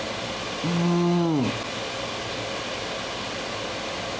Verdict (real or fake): real